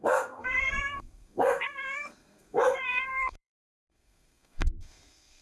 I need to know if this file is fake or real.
fake